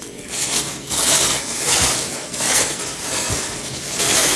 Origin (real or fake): fake